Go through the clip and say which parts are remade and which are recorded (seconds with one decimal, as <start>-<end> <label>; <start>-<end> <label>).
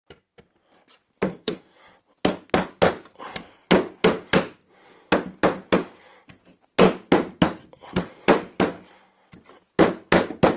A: 0.0-1.3 recorded; 1.3-1.8 remade; 1.8-10.6 recorded